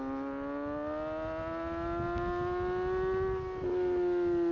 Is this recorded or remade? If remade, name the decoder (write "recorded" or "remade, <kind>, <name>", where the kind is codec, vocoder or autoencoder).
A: recorded